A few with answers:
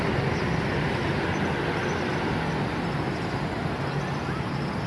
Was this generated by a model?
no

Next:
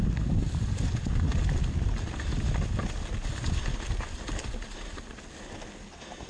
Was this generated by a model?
no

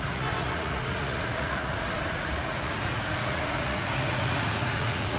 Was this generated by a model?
yes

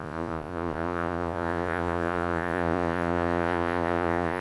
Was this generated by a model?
yes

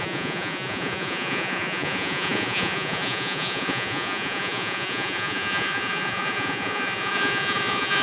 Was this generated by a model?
yes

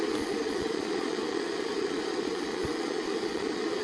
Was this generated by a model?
yes